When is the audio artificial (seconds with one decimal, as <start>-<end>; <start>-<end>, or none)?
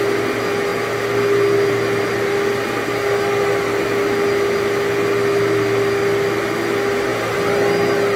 none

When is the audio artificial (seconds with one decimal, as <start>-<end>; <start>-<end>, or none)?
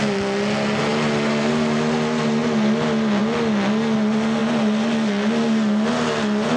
none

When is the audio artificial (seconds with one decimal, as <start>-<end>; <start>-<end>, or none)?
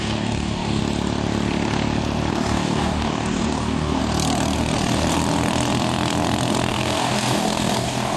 0.0-0.8; 2.3-4.0; 6.7-8.2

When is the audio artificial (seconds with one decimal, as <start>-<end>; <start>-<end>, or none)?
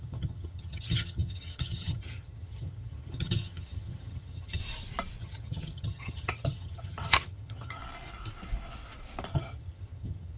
0.0-4.6; 5.2-7.8; 9.3-10.4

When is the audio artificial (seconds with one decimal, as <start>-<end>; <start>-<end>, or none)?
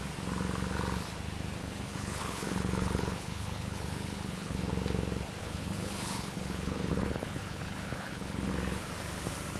1.6-4.7; 5.4-8.5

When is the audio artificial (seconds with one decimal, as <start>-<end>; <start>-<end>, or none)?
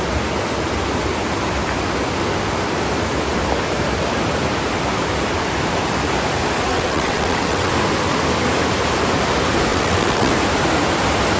6.7-7.7; 9.7-10.3